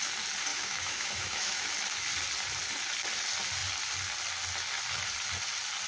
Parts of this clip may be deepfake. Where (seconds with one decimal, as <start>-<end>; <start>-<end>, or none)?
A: 0.5-1.6